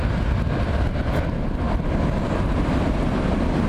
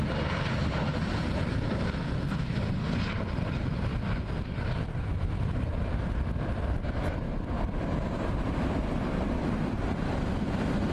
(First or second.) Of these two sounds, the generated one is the second